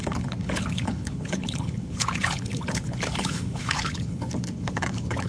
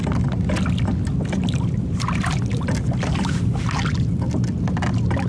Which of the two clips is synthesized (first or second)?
first